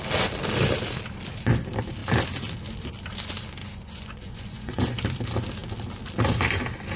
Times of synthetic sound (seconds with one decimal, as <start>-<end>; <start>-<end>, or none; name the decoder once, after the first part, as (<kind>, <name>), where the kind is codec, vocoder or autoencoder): 3.6-5.0 (vocoder, Vocos)